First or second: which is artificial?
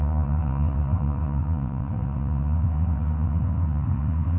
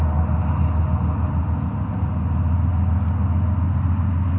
first